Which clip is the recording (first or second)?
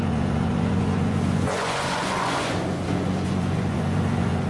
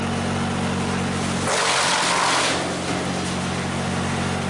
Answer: second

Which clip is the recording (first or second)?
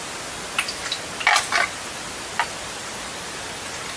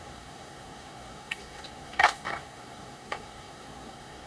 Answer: first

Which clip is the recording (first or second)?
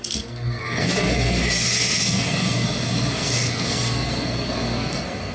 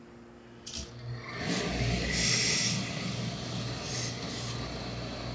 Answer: second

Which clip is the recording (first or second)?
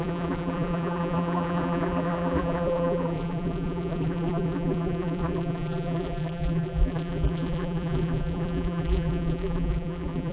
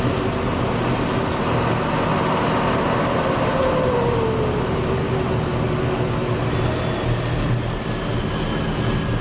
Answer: second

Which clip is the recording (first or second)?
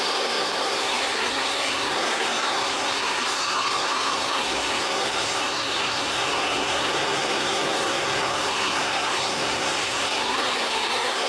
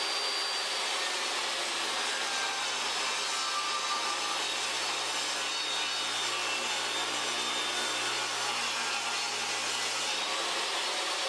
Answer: second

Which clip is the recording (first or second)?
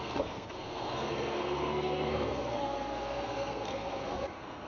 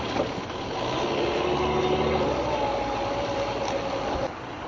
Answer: second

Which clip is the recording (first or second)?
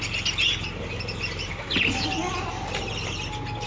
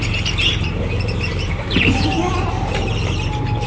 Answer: first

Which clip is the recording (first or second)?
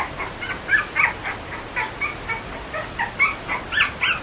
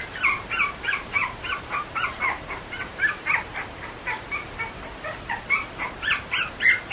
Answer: first